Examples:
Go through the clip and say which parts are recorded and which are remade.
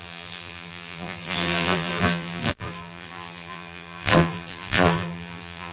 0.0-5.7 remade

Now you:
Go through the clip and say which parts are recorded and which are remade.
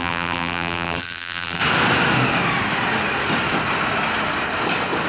0.0-1.6 remade; 1.6-5.1 recorded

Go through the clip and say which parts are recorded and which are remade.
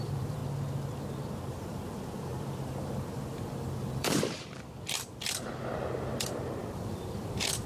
0.0-0.4 remade; 0.4-1.5 recorded; 1.5-7.7 remade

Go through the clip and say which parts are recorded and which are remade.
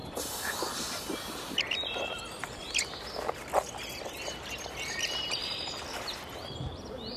0.0-4.3 recorded; 4.3-7.2 remade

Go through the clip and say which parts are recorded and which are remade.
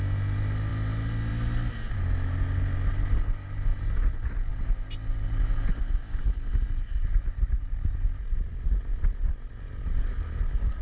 0.0-10.8 recorded